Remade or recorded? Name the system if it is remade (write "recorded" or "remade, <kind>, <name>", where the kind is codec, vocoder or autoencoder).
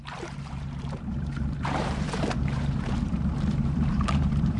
remade, vocoder, BigVGAN v2